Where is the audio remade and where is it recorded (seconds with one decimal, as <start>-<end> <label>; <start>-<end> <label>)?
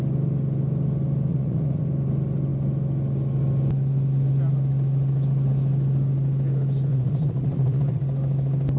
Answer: 0.0-1.3 recorded; 1.3-1.8 remade; 1.8-6.9 recorded; 6.9-8.0 remade; 8.0-8.8 recorded